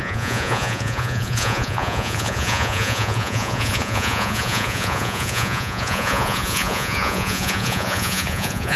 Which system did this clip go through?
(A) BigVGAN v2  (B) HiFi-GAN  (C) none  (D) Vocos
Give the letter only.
D